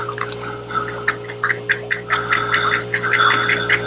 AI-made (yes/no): no